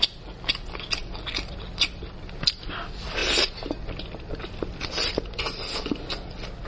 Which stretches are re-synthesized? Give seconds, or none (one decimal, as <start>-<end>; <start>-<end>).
none